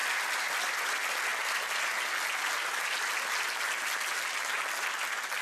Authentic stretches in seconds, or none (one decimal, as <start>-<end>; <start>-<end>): 0.0-5.4